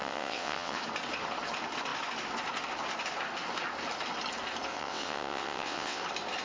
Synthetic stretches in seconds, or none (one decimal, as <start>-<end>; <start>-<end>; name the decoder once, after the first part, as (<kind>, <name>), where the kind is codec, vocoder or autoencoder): 0.0-0.8 (vocoder, WaveNeXt); 4.7-6.0